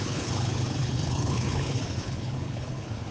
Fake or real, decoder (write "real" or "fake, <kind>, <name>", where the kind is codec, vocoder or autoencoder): fake, codec, HILCodec